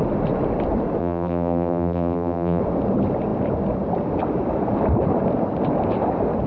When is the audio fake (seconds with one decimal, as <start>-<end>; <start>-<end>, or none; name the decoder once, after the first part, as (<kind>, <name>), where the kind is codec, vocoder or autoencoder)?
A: 1.0-2.6 (vocoder, BigVGAN v2)